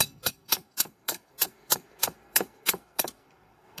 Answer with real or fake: fake